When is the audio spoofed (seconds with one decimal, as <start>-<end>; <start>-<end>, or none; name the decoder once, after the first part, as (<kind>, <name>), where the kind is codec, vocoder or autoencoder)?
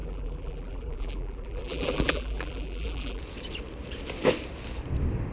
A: 0.0-3.2 (vocoder, BigVGAN v2)